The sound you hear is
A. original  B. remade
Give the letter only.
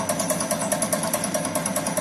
A